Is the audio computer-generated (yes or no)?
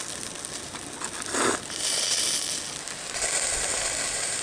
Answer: no